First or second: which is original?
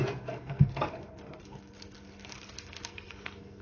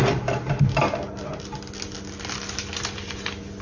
second